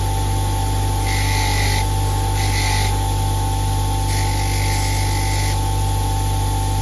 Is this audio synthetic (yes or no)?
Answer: no